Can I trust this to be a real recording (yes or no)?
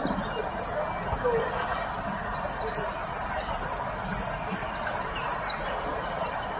yes